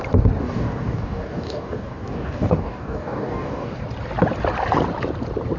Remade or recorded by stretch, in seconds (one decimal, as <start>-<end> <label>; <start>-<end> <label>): 0.0-0.4 recorded; 0.4-3.8 remade; 3.8-5.6 recorded